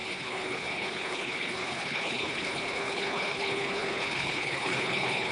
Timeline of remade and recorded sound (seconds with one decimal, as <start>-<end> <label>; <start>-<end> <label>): 0.0-5.3 remade